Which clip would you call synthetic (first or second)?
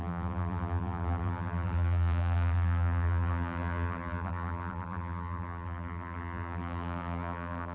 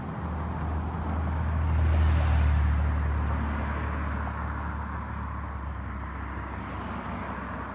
first